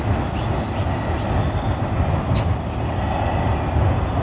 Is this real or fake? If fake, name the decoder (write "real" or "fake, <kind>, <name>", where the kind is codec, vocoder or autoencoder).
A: real